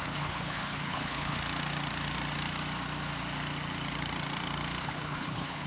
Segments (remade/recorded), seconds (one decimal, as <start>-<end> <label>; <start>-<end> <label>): 0.0-1.4 remade; 1.4-4.8 recorded; 4.8-5.7 remade